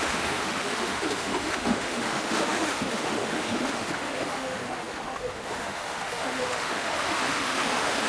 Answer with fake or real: fake